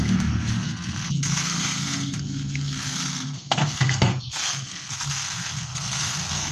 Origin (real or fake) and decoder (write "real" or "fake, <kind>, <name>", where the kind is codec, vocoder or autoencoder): fake, codec, SNAC